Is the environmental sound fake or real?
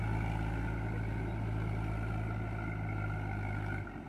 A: real